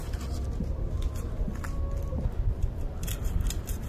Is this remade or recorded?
recorded